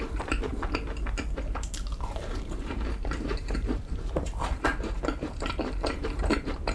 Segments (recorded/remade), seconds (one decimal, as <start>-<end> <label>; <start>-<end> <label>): 0.0-0.5 remade; 0.5-1.4 recorded; 1.4-6.7 remade